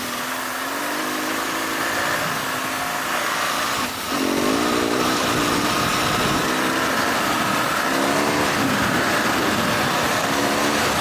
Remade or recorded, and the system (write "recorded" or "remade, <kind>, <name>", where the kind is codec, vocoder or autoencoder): recorded